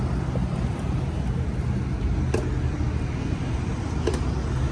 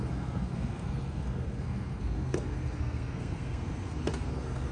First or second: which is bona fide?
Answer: first